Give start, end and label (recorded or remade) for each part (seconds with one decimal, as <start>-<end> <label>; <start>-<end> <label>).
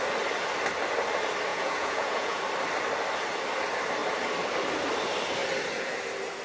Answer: 0.0-1.5 recorded; 1.5-2.4 remade; 2.4-6.4 recorded